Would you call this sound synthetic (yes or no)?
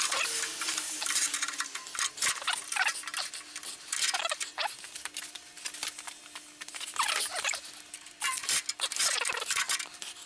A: no